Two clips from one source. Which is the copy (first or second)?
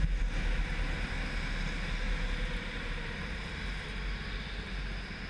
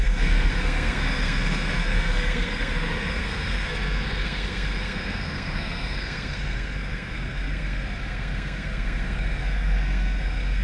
second